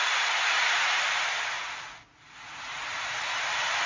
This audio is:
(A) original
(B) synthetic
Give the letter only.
A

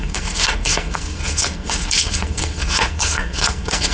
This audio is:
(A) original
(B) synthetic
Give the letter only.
B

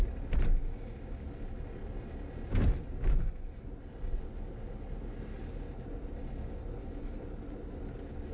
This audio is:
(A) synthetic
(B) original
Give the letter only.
B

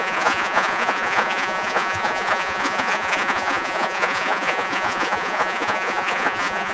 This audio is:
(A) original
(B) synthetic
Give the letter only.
B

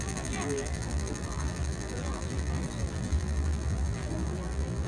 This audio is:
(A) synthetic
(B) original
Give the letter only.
A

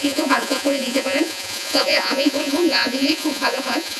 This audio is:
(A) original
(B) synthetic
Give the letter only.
B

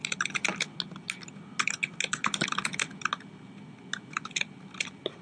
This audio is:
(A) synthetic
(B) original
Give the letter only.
B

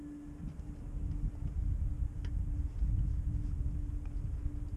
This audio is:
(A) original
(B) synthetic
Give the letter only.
A